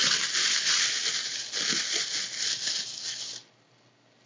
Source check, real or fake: real